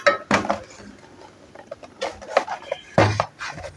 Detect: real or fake real